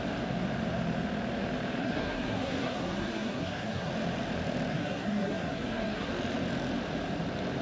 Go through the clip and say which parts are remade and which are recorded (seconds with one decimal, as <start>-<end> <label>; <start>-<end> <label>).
0.0-1.8 recorded; 1.8-3.9 remade; 3.9-4.7 recorded; 4.7-6.1 remade; 6.1-7.6 recorded